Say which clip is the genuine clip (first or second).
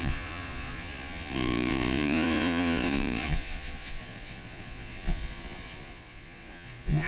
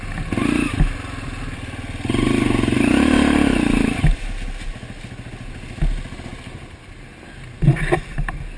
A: second